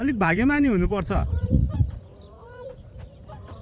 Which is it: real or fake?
fake